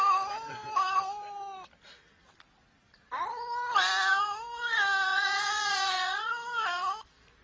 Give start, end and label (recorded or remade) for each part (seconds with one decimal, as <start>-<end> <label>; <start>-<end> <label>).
0.0-5.1 recorded; 5.1-6.3 remade; 6.3-7.4 recorded